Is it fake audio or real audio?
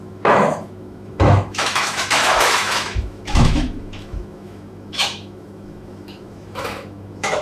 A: fake